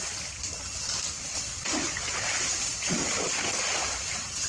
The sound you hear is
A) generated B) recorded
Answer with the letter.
B